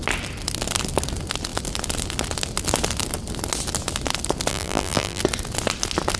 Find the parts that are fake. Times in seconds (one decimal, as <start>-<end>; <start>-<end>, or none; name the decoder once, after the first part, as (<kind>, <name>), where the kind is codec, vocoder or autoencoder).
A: 4.5-5.2 (vocoder, BigVGAN v2)